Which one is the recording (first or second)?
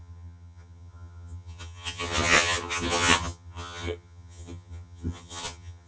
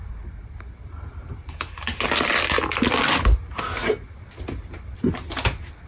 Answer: second